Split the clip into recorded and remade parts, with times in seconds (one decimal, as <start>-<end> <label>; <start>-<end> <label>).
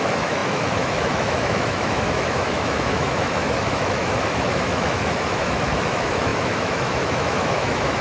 0.0-8.0 remade